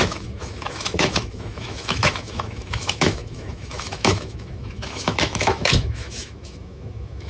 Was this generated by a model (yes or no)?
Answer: yes